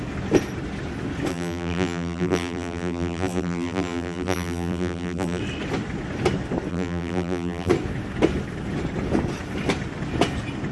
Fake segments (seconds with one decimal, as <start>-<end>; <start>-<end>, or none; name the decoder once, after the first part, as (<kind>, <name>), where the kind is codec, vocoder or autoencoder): 1.3-5.4 (vocoder, BigVGAN v2); 6.7-7.7